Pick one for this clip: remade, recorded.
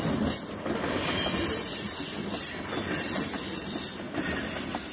recorded